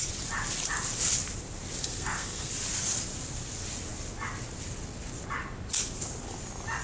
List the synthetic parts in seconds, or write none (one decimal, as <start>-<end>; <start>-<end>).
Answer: 1.8-2.5